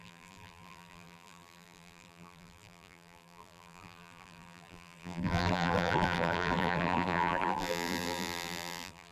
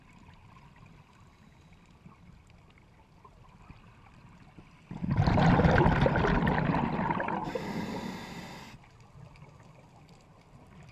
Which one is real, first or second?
second